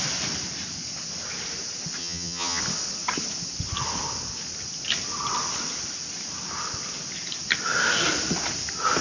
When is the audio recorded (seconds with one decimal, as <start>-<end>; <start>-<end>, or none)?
0.0-2.0; 2.6-9.0